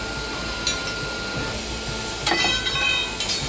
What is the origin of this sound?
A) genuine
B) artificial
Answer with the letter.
A